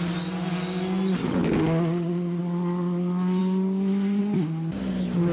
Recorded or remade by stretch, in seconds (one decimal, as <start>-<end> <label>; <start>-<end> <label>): 0.0-5.3 recorded